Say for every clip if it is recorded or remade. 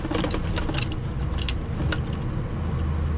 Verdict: recorded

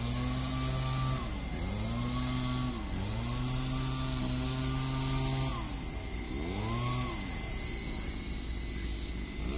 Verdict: recorded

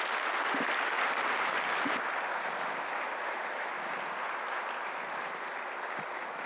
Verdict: recorded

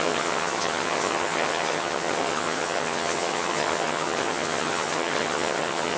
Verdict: remade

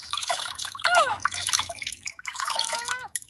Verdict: remade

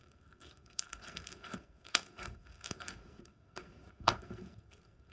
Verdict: remade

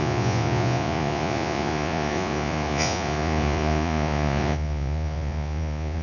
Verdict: remade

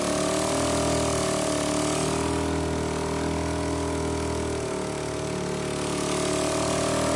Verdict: recorded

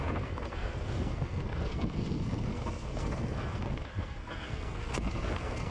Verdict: remade